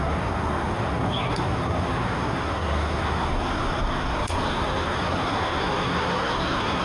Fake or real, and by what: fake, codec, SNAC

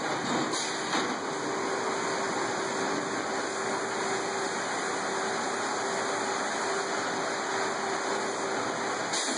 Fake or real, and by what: real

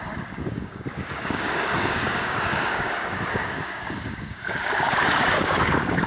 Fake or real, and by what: fake, codec, DAC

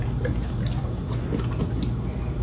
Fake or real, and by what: real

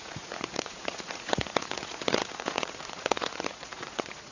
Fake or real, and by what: fake, vocoder, Vocos